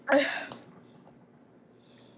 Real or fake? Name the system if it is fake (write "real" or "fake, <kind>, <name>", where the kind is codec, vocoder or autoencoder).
real